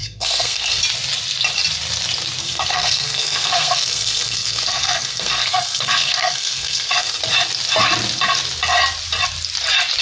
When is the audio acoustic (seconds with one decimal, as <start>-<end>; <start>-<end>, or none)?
0.8-2.4; 7.2-10.0